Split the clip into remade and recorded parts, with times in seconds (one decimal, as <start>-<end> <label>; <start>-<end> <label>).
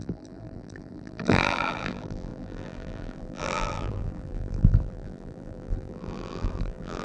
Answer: 0.0-7.0 remade